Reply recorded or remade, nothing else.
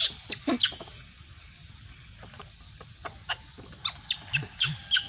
recorded